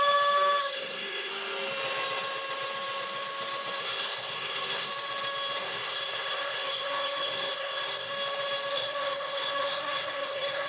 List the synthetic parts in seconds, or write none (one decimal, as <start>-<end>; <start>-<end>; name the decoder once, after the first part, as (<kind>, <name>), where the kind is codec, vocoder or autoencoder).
0.6-1.3 (codec, SNAC); 3.8-4.9; 5.6-8.1; 8.7-10.7